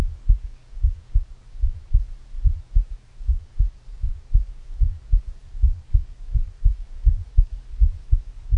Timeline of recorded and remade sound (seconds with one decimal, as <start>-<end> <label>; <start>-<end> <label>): 0.0-2.1 remade; 2.1-2.6 recorded; 2.6-8.6 remade